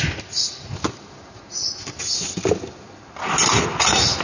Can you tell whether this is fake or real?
real